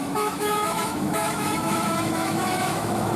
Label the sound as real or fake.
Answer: fake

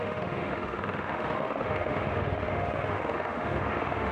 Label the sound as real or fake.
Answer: fake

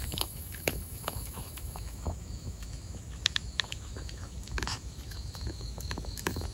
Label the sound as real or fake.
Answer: fake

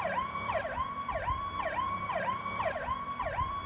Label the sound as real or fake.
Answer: real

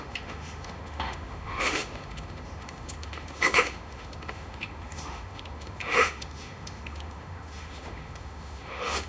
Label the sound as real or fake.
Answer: fake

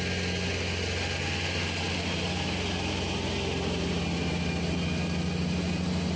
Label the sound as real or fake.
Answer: real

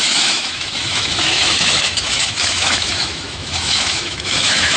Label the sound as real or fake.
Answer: fake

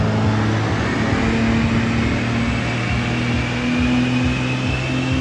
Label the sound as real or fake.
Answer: real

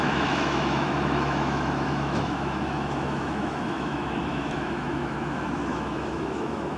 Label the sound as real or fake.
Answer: fake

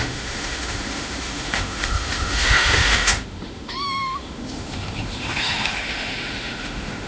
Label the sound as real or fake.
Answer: fake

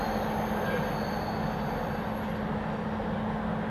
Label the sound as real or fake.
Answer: real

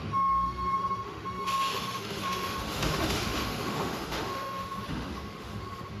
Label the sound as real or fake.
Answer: fake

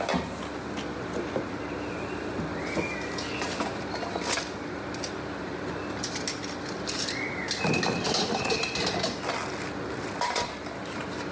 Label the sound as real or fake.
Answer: real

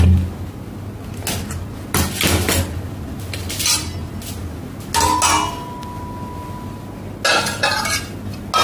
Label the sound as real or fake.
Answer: real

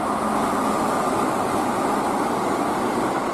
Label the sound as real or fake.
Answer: real